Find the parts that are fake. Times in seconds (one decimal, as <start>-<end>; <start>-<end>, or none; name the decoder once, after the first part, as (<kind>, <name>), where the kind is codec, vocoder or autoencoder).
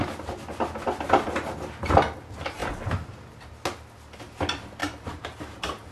4.8-5.9 (vocoder, BigVGAN v2)